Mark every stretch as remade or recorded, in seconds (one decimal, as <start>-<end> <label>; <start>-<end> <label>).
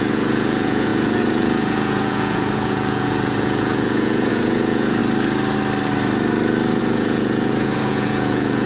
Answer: 0.0-5.0 remade; 5.0-6.8 recorded; 6.8-8.7 remade